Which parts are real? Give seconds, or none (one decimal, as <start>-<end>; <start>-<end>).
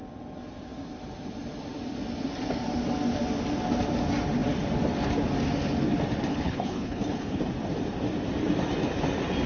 0.0-6.3; 7.4-9.5